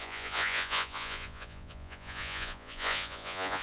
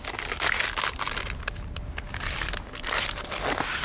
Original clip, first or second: second